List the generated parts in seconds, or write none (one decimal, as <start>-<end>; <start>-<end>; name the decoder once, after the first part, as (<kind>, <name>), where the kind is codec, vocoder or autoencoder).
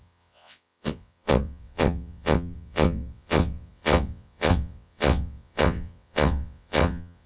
0.0-7.3 (vocoder, WaveNeXt)